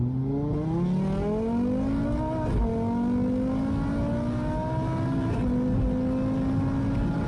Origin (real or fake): real